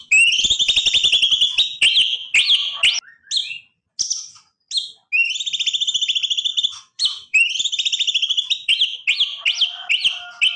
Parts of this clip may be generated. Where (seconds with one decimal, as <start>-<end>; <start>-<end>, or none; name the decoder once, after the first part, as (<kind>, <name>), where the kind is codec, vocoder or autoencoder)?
6.5-9.0 (vocoder, BigVGAN v2)